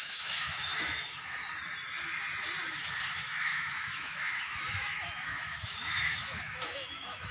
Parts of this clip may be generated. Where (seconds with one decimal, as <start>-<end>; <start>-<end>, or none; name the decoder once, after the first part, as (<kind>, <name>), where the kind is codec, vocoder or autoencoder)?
0.0-1.4 (autoencoder, DAC-VAE); 2.7-7.3